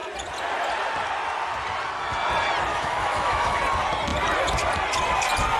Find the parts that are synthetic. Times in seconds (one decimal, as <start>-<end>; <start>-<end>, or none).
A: 2.7-3.6